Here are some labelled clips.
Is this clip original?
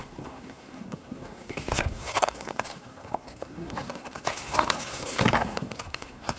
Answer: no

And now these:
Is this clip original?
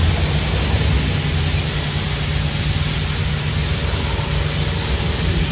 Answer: yes